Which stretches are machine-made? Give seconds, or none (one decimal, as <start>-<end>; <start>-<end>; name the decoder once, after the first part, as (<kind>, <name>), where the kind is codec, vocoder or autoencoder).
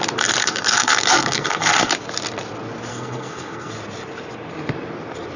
0.4-1.9 (codec, SNAC); 2.9-3.7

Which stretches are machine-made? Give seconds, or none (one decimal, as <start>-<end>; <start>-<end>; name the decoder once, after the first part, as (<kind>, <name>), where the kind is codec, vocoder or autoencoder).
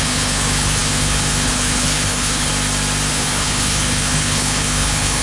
0.0-2.5 (codec, HILCodec); 3.1-5.2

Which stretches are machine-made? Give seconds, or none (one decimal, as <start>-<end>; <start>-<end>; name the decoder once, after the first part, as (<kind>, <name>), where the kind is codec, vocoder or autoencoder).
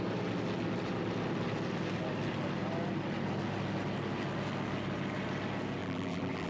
5.8-6.5 (vocoder, BigVGAN v2)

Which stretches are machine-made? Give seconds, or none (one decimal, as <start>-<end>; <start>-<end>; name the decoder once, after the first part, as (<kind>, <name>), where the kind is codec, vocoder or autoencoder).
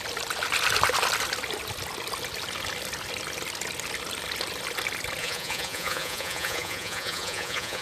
5.2-7.8 (vocoder, Vocos)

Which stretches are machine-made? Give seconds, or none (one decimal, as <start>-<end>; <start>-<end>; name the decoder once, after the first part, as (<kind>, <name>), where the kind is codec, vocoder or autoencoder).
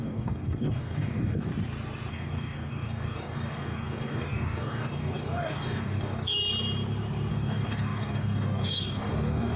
0.0-1.5 (codec, DAC); 2.1-6.4; 7.3-9.6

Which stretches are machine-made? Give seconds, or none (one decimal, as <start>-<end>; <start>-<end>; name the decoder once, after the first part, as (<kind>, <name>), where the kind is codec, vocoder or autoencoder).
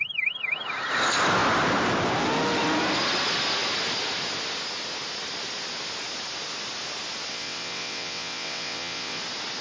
7.3-9.2 (vocoder, WaveNeXt)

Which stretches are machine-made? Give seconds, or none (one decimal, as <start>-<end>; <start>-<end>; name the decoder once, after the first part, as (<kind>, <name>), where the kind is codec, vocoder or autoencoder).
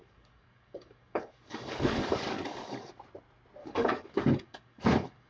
0.0-2.9 (codec, DAC); 3.6-5.3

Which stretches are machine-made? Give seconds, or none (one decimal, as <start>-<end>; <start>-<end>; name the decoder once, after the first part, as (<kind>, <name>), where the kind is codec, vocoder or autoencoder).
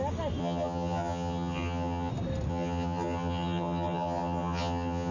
0.4-2.1 (vocoder, HiFi-GAN); 2.5-5.1